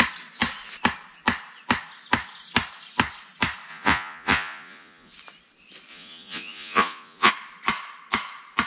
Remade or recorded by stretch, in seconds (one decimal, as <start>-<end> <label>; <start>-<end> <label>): 0.0-3.7 recorded; 3.7-5.1 remade; 5.1-5.9 recorded; 5.9-7.3 remade; 7.3-8.7 recorded